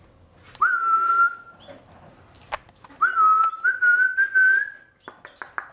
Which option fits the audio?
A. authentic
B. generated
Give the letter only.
A